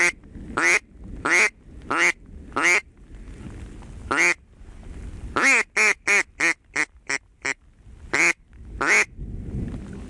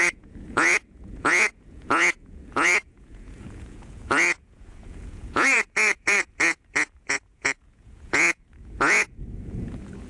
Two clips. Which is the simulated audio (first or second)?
second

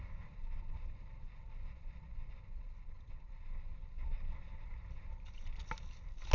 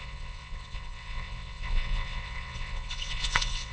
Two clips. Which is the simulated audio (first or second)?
second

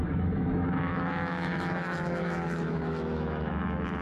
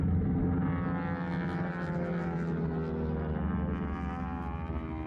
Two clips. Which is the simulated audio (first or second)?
first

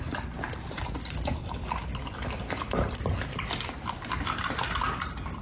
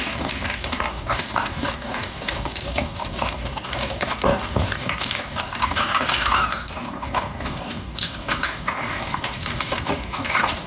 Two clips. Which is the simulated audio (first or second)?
second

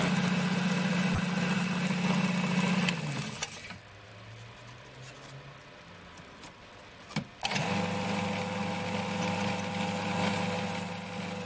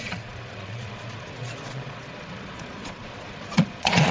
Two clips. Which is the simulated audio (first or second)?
second